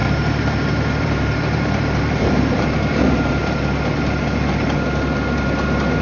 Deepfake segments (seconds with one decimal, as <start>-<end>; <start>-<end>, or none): 0.0-3.6